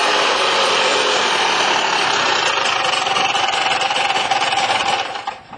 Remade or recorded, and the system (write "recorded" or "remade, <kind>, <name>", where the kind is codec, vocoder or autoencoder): recorded